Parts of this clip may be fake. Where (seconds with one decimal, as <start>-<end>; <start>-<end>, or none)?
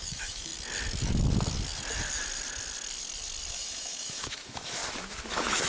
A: 0.0-0.5; 3.5-4.8; 5.3-5.7